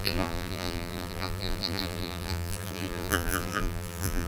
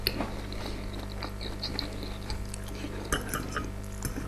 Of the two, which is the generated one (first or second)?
first